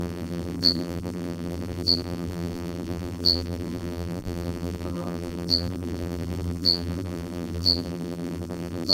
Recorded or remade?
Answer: remade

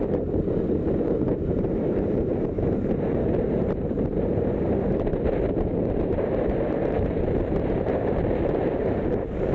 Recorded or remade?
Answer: remade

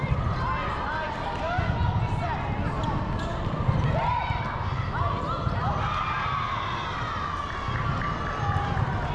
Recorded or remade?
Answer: recorded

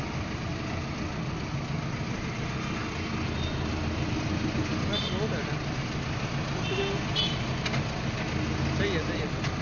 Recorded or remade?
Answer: recorded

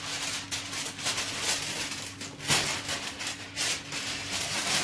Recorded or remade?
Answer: recorded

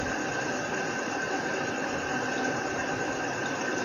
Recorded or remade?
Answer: recorded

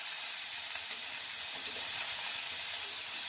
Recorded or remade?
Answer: recorded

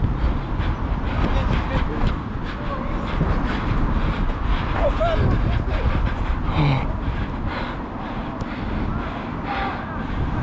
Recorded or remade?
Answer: recorded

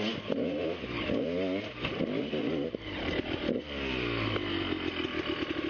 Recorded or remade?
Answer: recorded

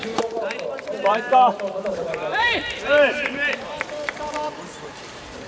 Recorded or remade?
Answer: remade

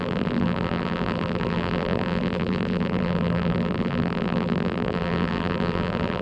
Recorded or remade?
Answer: remade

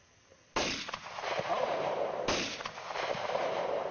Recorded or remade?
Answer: recorded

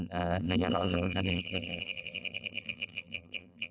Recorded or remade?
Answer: remade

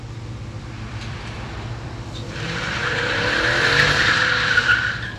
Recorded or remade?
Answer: remade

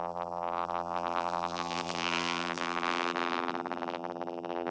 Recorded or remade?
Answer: remade